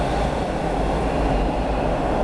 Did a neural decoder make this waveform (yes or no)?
no